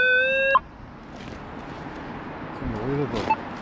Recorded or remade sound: recorded